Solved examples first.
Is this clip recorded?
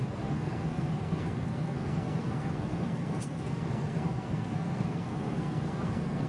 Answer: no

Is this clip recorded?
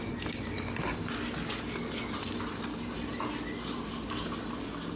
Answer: yes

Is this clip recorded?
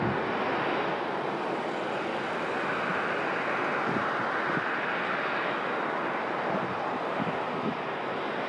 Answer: yes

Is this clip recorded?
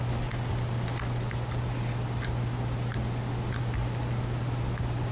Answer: yes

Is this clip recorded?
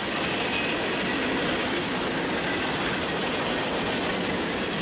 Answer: no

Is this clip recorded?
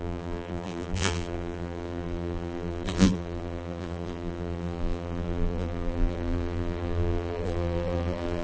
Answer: no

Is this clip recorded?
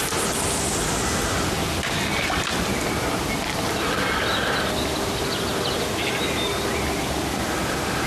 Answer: yes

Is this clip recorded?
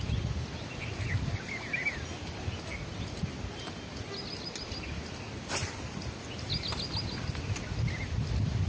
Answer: yes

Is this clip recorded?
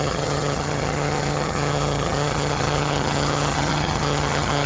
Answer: no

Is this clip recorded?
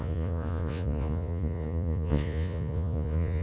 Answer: no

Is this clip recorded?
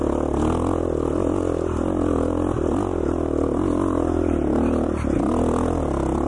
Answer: yes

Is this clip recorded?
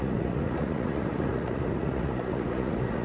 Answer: no